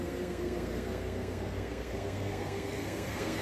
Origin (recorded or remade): remade